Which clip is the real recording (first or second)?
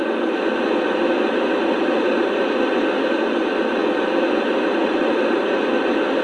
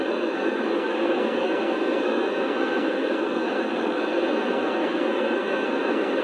first